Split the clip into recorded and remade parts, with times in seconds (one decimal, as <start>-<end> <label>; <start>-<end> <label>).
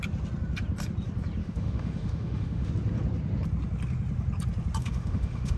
0.0-1.4 recorded; 1.4-2.7 remade; 2.7-4.8 recorded; 4.8-5.6 remade